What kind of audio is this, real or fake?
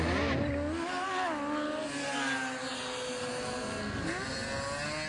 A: real